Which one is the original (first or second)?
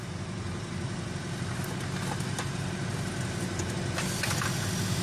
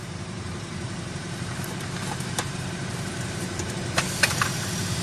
first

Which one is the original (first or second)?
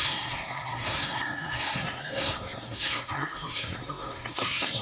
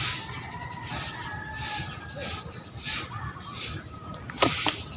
second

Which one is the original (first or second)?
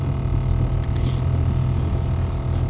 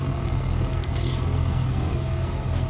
first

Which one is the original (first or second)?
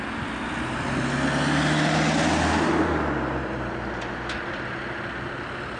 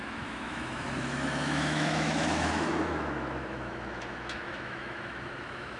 first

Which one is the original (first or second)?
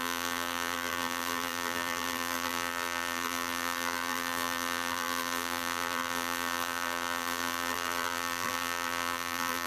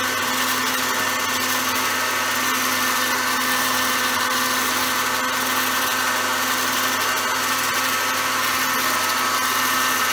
second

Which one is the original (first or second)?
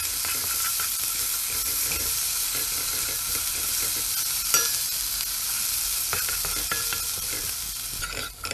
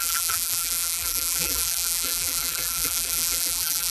first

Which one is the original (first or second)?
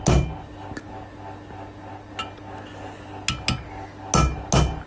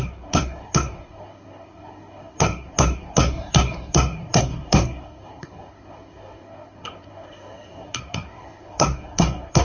first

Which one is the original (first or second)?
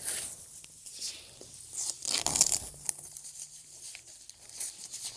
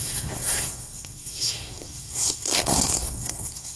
first